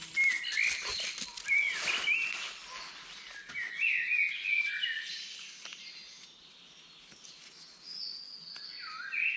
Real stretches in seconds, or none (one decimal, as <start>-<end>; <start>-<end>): 0.0-9.4